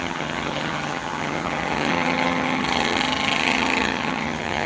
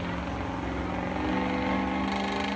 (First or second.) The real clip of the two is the second